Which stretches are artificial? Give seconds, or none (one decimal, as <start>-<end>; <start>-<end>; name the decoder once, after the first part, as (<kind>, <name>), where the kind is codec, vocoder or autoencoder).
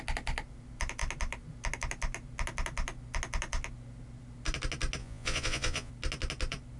5.0-5.9 (vocoder, Vocos)